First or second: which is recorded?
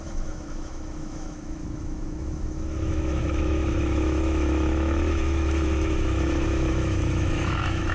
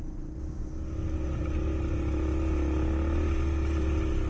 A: second